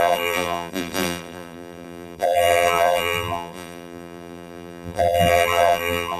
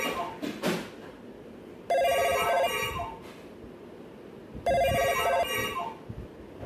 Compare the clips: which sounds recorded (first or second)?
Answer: second